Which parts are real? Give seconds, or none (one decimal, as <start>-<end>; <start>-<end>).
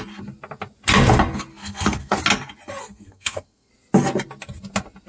0.0-1.5; 2.2-2.8; 3.7-5.1